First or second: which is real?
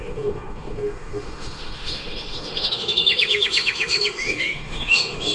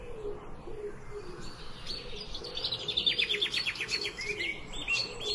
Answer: second